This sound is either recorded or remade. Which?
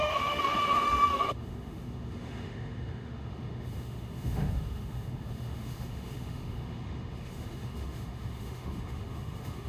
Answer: remade